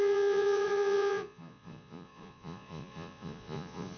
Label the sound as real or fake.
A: fake